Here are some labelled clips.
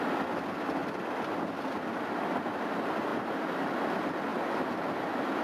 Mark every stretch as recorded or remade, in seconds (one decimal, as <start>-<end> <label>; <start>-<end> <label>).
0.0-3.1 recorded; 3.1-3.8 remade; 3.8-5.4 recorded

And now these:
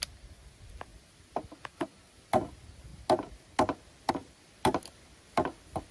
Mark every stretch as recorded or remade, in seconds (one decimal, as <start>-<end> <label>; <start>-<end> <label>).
0.0-2.9 remade; 2.9-4.1 recorded; 4.1-5.9 remade

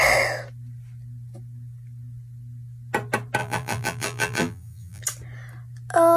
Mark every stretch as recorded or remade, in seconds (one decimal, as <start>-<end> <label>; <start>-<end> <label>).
0.0-3.4 recorded; 3.4-5.0 remade; 5.0-6.2 recorded

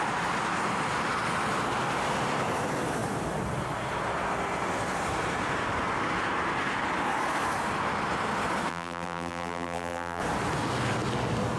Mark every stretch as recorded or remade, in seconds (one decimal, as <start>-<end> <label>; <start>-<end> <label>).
0.0-8.7 recorded; 8.7-10.2 remade; 10.2-11.6 recorded

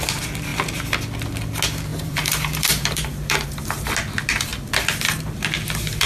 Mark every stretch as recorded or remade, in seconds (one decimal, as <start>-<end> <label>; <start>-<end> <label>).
0.0-1.9 recorded; 1.9-3.6 remade; 3.6-6.1 recorded

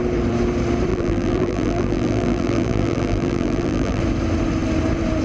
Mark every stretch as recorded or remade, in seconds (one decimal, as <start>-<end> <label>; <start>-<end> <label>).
0.0-0.9 recorded; 0.9-4.0 remade; 4.0-5.2 recorded